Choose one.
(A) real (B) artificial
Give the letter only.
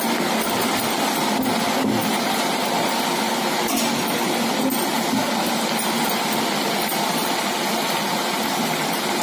A